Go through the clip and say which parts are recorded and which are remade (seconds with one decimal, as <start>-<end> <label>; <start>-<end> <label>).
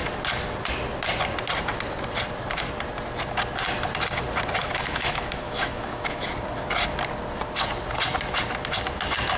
0.0-4.6 recorded; 4.6-6.3 remade; 6.3-9.4 recorded